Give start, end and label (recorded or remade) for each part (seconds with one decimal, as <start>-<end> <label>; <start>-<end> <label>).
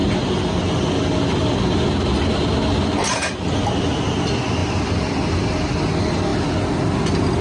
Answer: 0.0-0.7 remade; 0.7-7.4 recorded